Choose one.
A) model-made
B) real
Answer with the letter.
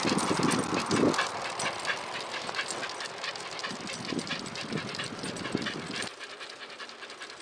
B